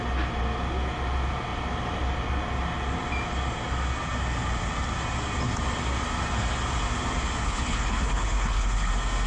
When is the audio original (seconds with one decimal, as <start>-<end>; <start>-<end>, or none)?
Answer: 0.0-7.4; 8.9-9.3